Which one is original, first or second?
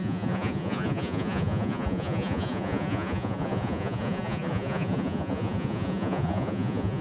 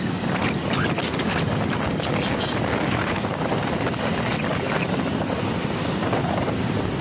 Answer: second